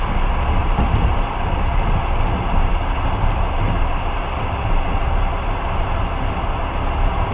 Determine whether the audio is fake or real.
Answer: real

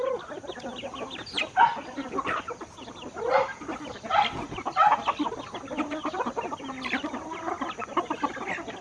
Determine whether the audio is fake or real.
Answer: real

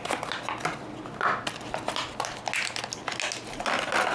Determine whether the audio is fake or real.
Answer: real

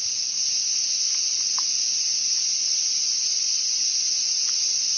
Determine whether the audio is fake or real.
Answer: real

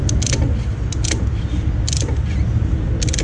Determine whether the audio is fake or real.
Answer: real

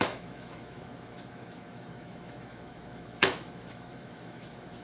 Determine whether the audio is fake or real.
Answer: fake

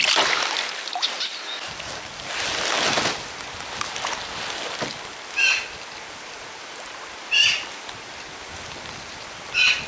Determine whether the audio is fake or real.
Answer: real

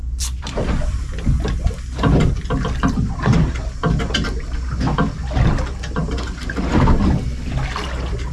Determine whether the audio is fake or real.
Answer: real